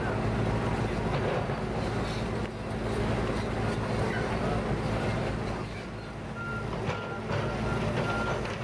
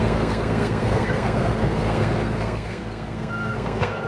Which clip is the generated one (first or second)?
second